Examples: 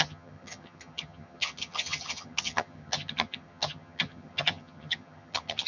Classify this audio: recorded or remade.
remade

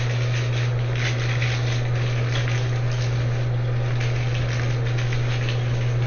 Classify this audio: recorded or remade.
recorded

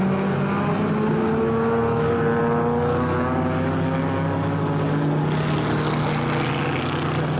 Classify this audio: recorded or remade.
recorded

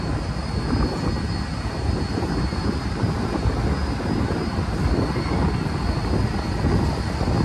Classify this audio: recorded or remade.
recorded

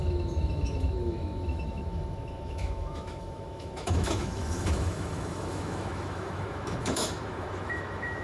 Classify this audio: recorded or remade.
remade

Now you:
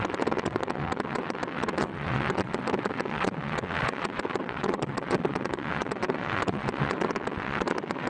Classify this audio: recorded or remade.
remade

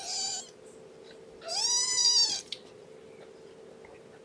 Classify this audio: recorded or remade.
recorded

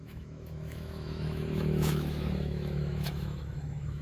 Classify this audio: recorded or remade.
remade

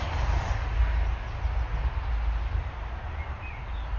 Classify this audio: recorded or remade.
recorded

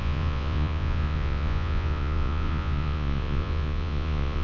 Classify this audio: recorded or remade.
remade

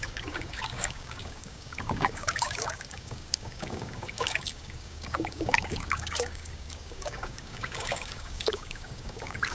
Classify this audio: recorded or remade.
remade